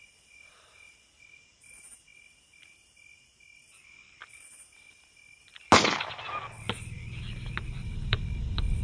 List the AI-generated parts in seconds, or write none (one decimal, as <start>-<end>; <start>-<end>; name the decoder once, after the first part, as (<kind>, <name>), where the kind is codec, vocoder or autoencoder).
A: 0.0-2.1 (vocoder, BigVGAN v2); 6.6-8.8